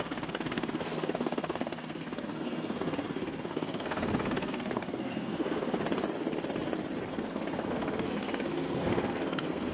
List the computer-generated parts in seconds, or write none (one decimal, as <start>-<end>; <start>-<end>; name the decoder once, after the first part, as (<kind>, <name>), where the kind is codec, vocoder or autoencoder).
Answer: 0.0-5.8 (codec, SNAC); 7.1-9.7